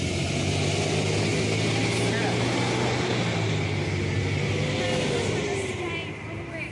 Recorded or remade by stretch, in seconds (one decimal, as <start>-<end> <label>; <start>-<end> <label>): 0.0-6.7 recorded